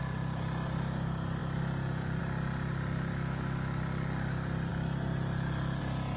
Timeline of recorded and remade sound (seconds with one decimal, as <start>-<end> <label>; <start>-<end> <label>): 0.0-3.1 recorded; 3.1-3.8 remade; 3.8-6.2 recorded